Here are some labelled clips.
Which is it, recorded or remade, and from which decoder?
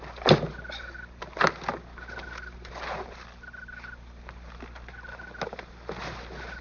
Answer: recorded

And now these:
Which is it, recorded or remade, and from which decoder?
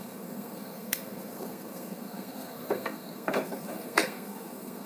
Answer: remade, codec, SNAC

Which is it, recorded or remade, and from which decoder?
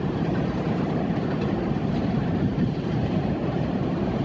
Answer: remade, vocoder, BigVGAN v2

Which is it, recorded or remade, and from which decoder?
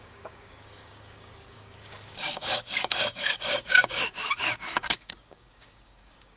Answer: remade, codec, DAC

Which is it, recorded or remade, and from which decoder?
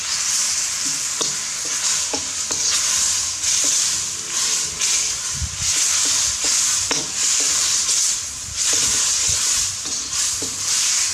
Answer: recorded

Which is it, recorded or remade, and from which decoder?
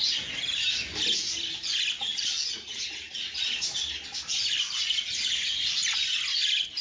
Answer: recorded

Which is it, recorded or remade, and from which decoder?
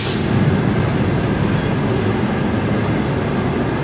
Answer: recorded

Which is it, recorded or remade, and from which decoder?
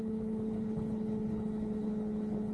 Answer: remade, codec, HILCodec